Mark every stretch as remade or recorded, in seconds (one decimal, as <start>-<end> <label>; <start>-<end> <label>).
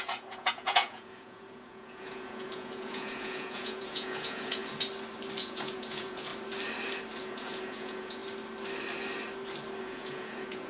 0.0-4.6 remade; 4.6-5.4 recorded; 5.4-6.3 remade; 6.3-7.2 recorded; 7.2-8.2 remade; 8.2-9.8 recorded; 9.8-10.7 remade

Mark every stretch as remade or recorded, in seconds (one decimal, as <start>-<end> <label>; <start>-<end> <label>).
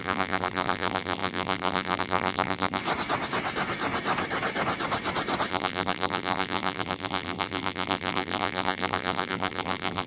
0.0-2.8 remade; 2.8-5.5 recorded; 5.5-10.1 remade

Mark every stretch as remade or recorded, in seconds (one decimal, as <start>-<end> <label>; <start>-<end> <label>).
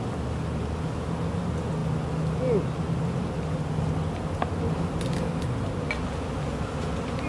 0.0-7.3 recorded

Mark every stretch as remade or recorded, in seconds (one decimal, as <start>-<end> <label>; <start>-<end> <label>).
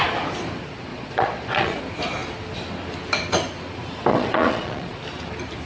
0.0-0.9 recorded; 0.9-1.8 remade; 1.8-4.1 recorded; 4.1-5.0 remade; 5.0-5.7 recorded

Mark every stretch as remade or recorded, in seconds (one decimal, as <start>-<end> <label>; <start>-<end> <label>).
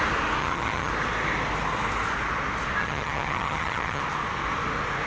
0.0-0.4 recorded; 0.4-0.9 remade; 0.9-2.8 recorded; 2.8-4.0 remade; 4.0-5.1 recorded